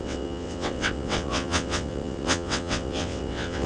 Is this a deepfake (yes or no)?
yes